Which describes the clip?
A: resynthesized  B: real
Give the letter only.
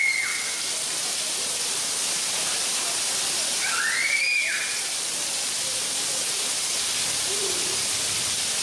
A